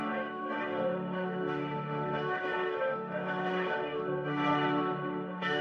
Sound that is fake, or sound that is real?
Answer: fake